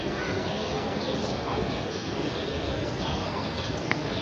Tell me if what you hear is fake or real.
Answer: fake